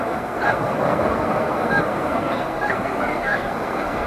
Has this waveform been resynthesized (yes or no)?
yes